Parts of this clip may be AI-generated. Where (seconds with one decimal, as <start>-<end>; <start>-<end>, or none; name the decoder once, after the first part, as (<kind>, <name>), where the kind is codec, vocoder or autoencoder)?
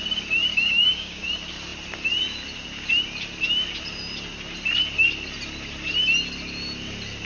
0.5-1.2 (codec, DAC)